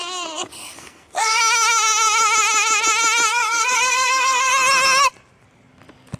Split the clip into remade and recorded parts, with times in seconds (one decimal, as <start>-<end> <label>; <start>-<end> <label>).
0.0-1.4 remade; 1.4-3.3 recorded; 3.3-4.5 remade; 4.5-6.2 recorded